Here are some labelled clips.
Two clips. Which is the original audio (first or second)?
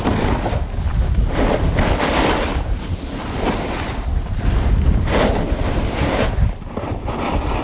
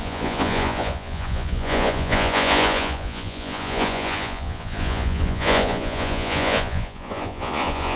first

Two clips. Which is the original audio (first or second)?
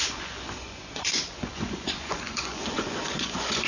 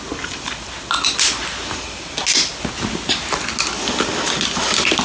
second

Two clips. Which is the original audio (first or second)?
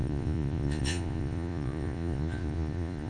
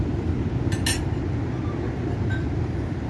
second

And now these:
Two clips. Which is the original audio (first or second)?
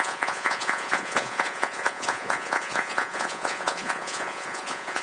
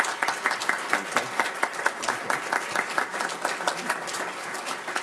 second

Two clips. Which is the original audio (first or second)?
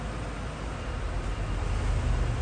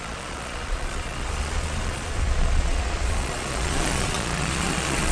first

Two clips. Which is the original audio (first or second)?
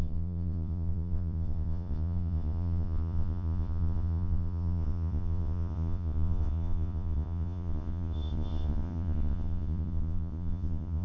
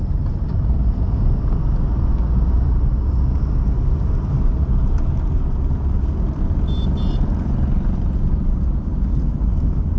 second